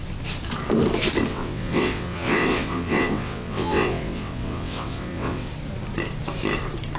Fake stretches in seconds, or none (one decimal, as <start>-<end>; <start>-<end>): 1.3-5.5